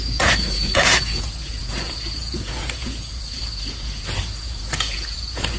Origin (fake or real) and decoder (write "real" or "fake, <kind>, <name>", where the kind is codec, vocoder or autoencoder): fake, vocoder, Vocos